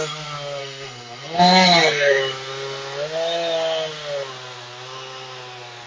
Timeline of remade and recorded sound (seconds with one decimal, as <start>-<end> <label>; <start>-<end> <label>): 0.0-0.6 recorded; 0.6-2.2 remade; 2.2-5.9 recorded